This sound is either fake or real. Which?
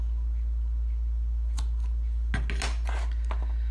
real